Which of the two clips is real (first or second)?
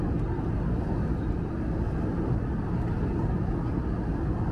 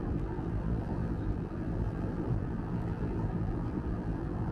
first